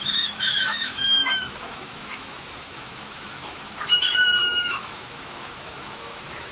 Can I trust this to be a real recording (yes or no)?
no